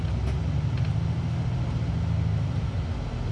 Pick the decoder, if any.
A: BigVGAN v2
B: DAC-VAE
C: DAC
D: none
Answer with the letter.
D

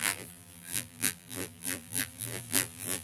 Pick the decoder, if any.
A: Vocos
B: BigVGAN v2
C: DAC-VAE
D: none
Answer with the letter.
B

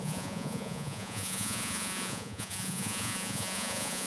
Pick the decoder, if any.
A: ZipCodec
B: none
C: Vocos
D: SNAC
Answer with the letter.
C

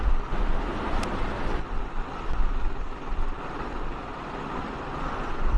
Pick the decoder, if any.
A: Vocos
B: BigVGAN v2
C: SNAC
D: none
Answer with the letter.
D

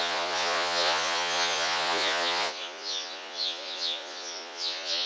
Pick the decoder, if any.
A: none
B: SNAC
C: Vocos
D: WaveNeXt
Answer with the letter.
C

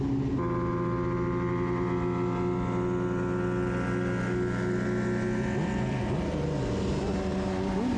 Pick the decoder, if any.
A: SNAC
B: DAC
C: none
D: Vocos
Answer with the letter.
C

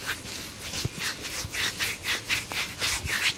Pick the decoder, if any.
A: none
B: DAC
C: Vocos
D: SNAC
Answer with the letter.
A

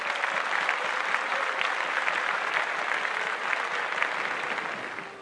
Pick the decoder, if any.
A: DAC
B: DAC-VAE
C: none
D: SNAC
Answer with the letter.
C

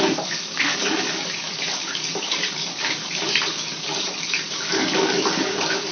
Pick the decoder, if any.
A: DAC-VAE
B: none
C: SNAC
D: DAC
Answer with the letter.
D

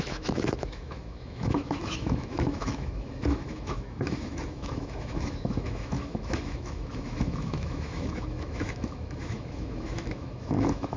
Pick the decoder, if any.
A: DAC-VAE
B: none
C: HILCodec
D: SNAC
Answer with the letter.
A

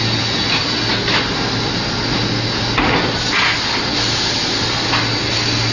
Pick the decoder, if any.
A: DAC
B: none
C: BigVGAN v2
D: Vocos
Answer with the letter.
B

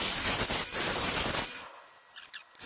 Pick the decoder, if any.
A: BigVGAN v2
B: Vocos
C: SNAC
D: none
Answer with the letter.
D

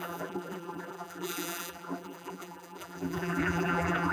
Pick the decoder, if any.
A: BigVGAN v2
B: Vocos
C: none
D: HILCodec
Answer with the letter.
A